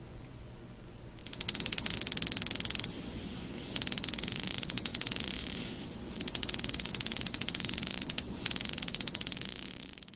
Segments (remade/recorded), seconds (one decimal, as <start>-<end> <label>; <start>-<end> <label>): 0.0-1.2 remade; 1.2-3.0 recorded; 3.0-10.2 remade